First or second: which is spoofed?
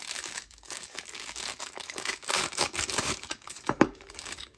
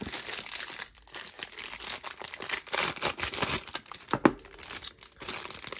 first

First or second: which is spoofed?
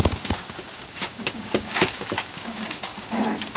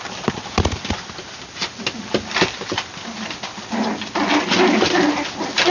first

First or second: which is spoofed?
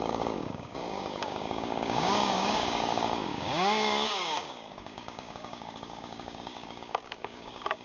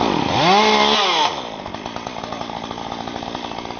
first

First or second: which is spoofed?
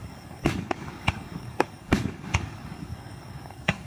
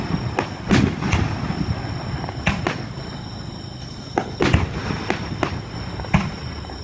first